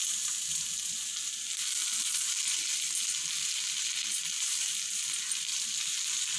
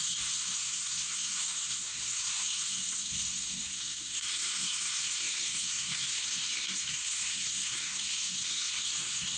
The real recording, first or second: first